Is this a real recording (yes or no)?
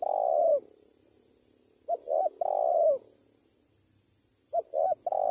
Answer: yes